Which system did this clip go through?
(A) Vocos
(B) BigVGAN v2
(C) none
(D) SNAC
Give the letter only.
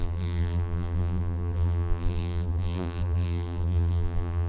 B